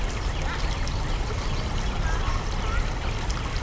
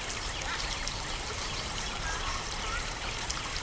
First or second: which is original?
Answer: first